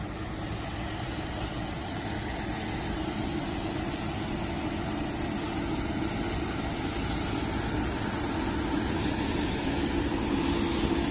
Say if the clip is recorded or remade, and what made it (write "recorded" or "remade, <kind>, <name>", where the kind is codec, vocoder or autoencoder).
recorded